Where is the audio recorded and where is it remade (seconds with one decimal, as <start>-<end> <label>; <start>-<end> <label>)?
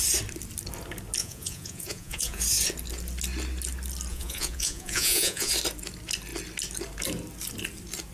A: 0.0-1.2 recorded; 1.2-2.4 remade; 2.4-4.1 recorded; 4.1-5.5 remade; 5.5-8.1 recorded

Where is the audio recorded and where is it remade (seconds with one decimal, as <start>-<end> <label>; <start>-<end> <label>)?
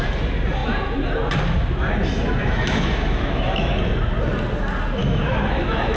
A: 0.0-2.4 recorded; 2.4-3.7 remade; 3.7-5.0 recorded; 5.0-6.0 remade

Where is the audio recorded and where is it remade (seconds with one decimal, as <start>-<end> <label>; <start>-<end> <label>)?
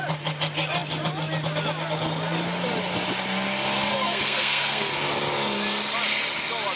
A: 0.0-3.9 recorded; 3.9-4.9 remade; 4.9-6.8 recorded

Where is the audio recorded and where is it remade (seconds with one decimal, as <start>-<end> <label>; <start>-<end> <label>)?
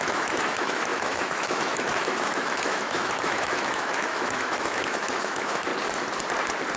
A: 0.0-5.7 remade; 5.7-6.8 recorded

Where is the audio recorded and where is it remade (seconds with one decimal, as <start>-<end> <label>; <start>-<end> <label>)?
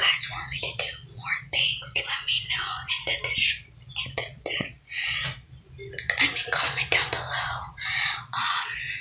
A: 0.0-2.8 remade; 2.8-4.2 recorded; 4.2-5.3 remade; 5.3-8.0 recorded; 8.0-9.0 remade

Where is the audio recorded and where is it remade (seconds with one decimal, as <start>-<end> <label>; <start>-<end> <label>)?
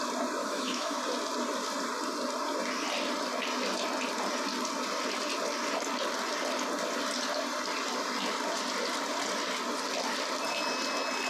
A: 0.0-0.4 recorded; 0.4-1.0 remade; 1.0-11.3 recorded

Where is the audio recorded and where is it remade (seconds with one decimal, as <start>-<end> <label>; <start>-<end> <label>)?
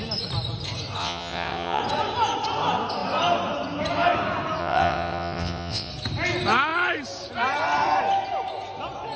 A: 0.0-1.0 recorded; 1.0-1.8 remade; 1.8-4.6 recorded; 4.6-5.9 remade; 5.9-9.2 recorded